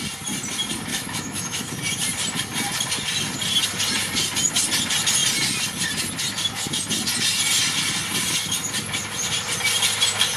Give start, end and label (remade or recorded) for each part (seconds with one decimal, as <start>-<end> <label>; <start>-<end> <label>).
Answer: 0.0-0.9 recorded; 0.9-1.7 remade; 1.7-10.4 recorded